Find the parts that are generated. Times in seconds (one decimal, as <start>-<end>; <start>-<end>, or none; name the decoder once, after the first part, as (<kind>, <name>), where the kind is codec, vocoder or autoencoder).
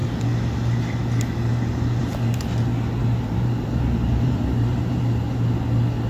3.0-5.0 (vocoder, BigVGAN v2)